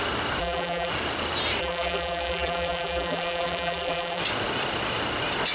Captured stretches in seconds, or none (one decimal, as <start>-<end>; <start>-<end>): 0.0-0.4; 0.9-1.6; 4.2-5.5